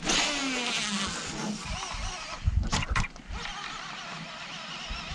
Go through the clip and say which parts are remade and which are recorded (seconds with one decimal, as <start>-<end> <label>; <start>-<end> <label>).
0.0-5.1 recorded

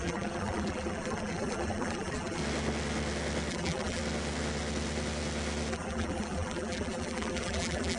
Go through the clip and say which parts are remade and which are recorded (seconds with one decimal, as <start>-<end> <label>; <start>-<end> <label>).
0.0-2.4 remade; 2.4-3.5 recorded; 3.5-4.0 remade; 4.0-5.7 recorded; 5.7-8.0 remade

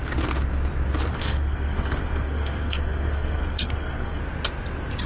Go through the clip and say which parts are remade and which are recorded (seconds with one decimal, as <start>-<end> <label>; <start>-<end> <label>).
0.0-1.1 recorded; 1.1-4.2 remade; 4.2-5.1 recorded

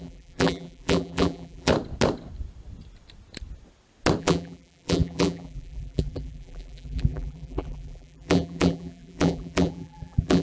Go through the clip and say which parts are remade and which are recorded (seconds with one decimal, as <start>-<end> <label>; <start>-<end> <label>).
0.0-1.7 remade; 1.7-4.2 recorded; 4.2-10.4 remade

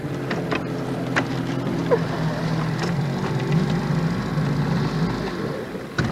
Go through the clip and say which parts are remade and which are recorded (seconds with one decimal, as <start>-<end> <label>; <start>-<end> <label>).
0.0-6.1 recorded

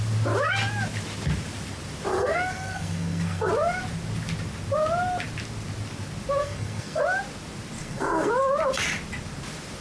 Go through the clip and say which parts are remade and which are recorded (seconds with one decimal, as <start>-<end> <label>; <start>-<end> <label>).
0.0-2.1 recorded; 2.1-3.5 remade; 3.5-6.4 recorded; 6.4-7.0 remade; 7.0-7.8 recorded; 7.8-8.3 remade; 8.3-9.8 recorded

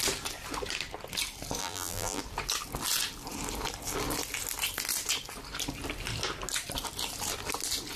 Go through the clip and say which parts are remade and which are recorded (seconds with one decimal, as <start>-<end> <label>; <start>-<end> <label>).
0.0-1.6 recorded; 1.6-2.2 remade; 2.2-8.0 recorded

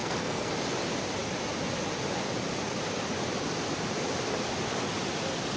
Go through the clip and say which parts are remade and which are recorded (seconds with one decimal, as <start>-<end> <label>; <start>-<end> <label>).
0.0-0.5 remade; 0.5-5.6 recorded